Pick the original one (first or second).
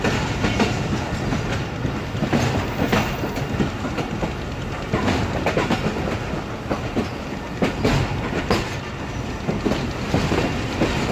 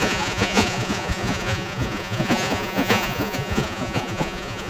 first